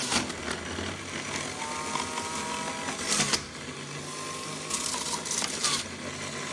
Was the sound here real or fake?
real